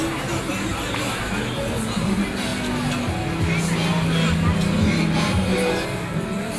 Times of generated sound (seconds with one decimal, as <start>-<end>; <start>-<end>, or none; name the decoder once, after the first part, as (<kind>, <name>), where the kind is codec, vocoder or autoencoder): none